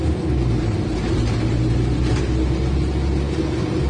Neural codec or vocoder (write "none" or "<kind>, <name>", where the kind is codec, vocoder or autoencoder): none